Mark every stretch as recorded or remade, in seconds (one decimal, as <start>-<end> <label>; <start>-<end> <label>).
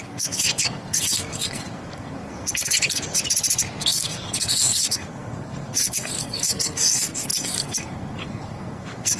0.0-3.2 remade; 3.2-3.8 recorded; 3.8-9.2 remade